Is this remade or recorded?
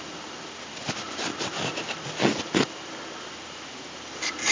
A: recorded